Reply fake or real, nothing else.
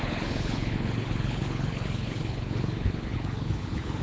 fake